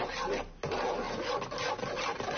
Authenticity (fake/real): real